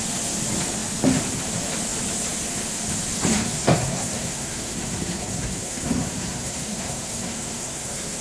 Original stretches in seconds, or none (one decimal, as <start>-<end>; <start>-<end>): 0.0-3.3